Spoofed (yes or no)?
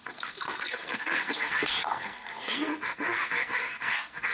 yes